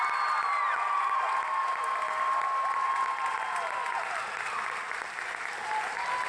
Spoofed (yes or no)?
no